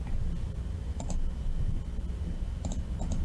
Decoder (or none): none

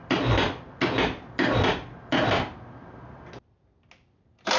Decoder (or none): none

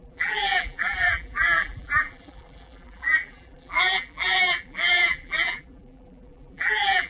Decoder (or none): vocoder, BigVGAN v2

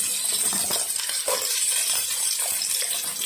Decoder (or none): vocoder, BigVGAN v2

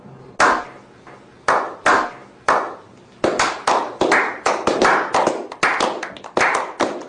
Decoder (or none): none